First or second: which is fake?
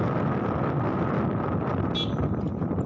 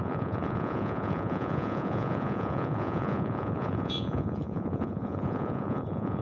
second